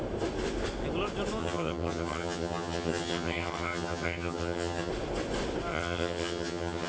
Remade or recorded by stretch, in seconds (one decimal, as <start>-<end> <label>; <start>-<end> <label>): 0.0-1.4 recorded; 1.4-4.9 remade; 4.9-5.7 recorded; 5.7-6.9 remade